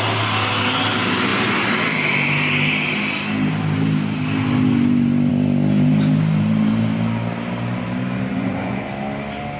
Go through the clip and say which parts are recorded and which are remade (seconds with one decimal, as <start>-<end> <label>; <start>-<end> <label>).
0.0-8.3 recorded; 8.3-8.9 remade; 8.9-9.6 recorded

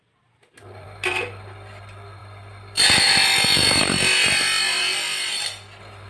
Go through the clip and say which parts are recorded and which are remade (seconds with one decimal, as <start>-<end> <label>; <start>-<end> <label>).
0.0-6.1 recorded

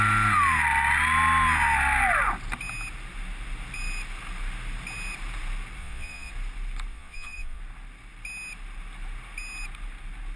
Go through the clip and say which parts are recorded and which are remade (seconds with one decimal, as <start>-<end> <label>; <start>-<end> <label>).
0.0-5.8 recorded; 5.8-6.3 remade; 6.3-6.9 recorded; 6.9-7.6 remade; 7.6-10.4 recorded

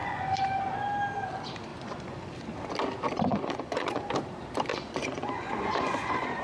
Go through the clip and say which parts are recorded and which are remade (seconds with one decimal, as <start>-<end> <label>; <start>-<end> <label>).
0.0-0.6 remade; 0.6-1.7 recorded; 1.7-2.3 remade; 2.3-3.3 recorded; 3.3-4.1 remade; 4.1-4.7 recorded; 4.7-6.4 remade

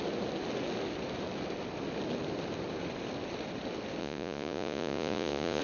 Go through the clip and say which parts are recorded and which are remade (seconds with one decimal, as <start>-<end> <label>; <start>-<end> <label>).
0.0-4.0 recorded; 4.0-5.6 remade